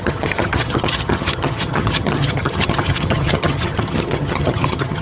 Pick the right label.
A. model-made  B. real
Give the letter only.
A